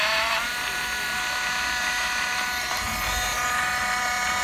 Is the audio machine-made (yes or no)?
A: no